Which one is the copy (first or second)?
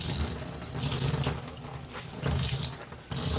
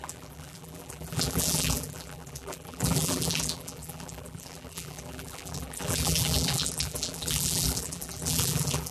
second